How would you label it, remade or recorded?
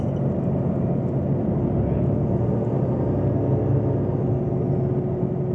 recorded